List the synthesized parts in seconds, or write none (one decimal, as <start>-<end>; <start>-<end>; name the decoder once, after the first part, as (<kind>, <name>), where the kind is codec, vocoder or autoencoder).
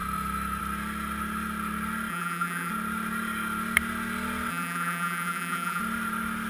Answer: 2.1-2.7 (vocoder, BigVGAN v2); 4.5-5.8